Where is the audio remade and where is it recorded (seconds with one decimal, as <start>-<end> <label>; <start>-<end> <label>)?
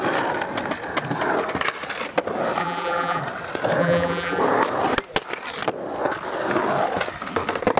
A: 0.0-2.6 recorded; 2.6-3.2 remade; 3.2-3.8 recorded; 3.8-4.4 remade; 4.4-7.8 recorded